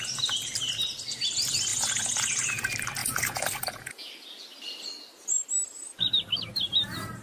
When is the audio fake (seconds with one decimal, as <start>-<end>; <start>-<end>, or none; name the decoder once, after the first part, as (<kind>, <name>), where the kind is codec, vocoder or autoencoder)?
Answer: 1.7-2.6 (vocoder, Vocos); 3.0-4.1